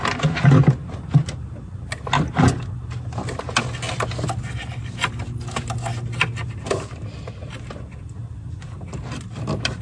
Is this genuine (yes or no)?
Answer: yes